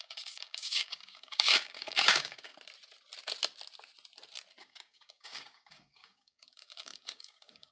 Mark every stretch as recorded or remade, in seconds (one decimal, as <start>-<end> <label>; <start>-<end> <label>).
0.0-2.5 remade; 2.5-4.6 recorded; 4.6-7.7 remade